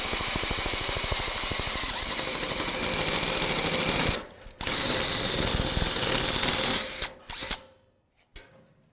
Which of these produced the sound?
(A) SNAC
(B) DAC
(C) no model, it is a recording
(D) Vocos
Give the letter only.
C